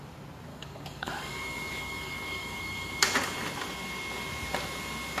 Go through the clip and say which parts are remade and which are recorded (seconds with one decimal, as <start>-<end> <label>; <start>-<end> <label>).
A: 0.0-0.5 recorded; 0.5-3.0 remade; 3.0-5.2 recorded